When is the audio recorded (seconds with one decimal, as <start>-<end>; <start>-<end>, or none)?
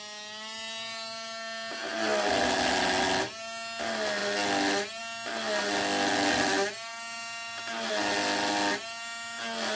0.0-9.8